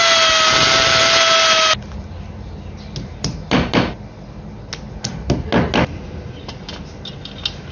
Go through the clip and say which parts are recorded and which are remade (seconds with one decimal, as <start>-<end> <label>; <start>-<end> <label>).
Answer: 0.0-7.7 recorded